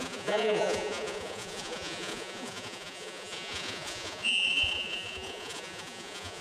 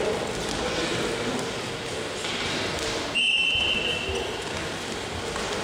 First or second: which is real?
second